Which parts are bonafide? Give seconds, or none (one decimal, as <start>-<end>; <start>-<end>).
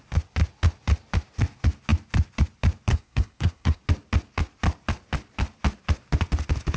0.0-2.9; 3.8-6.8